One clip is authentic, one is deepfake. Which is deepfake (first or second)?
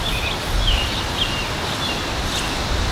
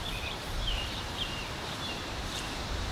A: second